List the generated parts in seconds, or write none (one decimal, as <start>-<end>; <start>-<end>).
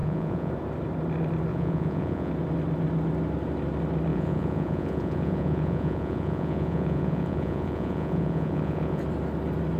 0.0-0.5; 1.5-2.3; 4.1-9.0